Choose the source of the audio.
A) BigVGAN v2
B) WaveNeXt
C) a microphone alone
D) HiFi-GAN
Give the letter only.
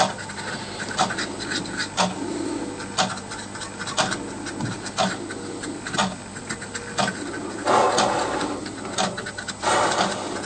C